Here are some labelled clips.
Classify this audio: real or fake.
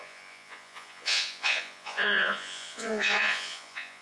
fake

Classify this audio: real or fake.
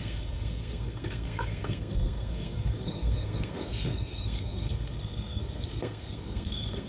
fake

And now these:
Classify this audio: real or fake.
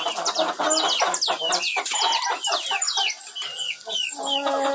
real